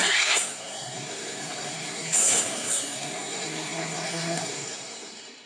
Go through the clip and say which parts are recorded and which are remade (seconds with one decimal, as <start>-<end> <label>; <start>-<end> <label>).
0.0-5.5 remade